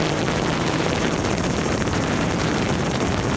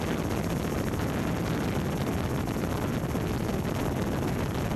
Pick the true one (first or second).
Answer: second